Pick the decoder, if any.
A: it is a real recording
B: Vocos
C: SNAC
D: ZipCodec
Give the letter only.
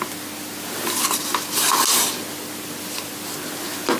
A